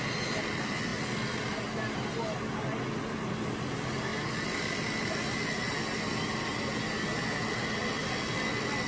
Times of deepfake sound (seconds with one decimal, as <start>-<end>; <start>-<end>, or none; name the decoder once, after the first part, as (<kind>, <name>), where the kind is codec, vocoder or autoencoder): none